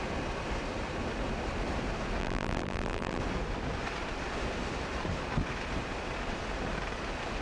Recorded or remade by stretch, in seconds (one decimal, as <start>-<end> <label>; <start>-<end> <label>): 0.0-2.2 recorded; 2.2-3.2 remade; 3.2-7.4 recorded